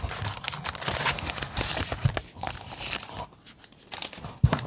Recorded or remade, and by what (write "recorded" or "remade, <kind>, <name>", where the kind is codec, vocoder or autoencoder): recorded